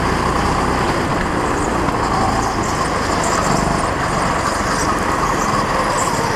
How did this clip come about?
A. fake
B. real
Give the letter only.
B